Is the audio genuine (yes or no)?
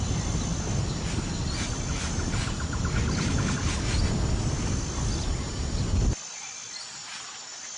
yes